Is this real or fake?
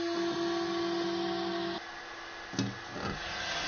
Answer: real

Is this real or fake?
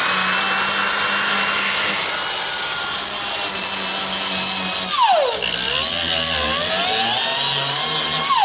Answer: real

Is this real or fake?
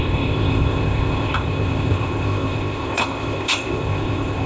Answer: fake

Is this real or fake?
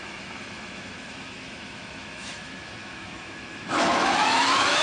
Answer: fake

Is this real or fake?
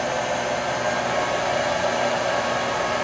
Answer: real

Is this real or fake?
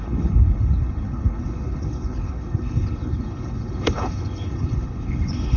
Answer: fake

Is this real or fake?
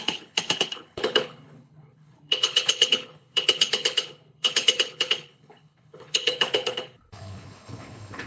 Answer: fake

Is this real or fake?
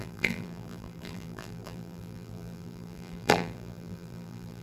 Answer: fake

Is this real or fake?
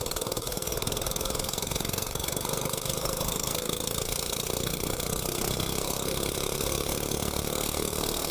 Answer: fake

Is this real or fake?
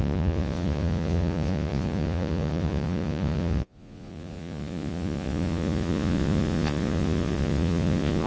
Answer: fake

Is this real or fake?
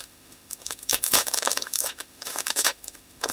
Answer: fake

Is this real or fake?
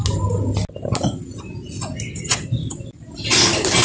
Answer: real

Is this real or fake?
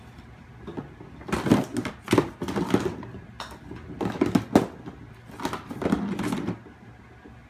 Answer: real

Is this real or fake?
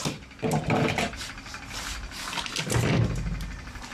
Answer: real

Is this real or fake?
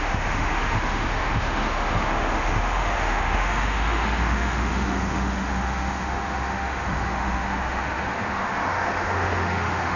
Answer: fake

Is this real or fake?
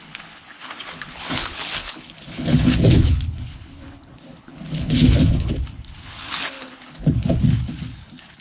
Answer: fake